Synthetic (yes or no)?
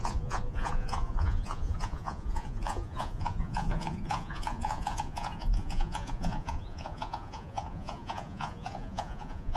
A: yes